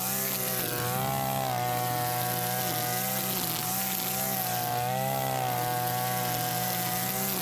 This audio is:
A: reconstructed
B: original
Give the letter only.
B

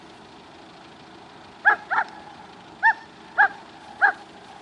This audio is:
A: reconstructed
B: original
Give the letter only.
B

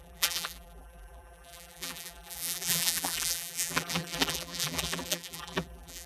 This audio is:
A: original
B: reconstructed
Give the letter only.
B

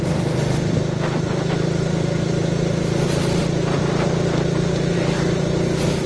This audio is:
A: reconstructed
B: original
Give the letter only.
B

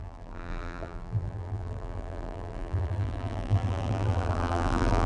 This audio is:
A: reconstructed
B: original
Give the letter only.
A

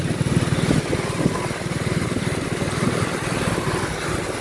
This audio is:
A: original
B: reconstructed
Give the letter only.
B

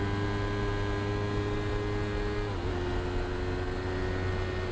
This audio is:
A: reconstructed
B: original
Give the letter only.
B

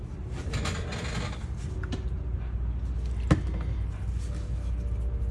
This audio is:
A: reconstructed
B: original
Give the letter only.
B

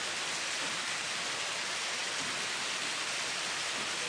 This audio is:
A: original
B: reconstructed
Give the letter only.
A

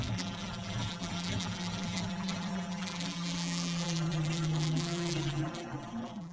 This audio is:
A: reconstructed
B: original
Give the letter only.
A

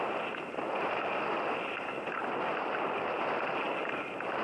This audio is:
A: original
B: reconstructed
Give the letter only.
A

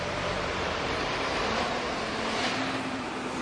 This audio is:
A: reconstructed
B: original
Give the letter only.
A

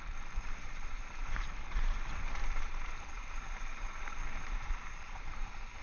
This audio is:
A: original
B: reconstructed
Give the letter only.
B